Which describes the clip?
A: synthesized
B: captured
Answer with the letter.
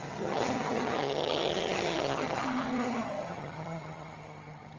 A